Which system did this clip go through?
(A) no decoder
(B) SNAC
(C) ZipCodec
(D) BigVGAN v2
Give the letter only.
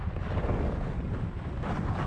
A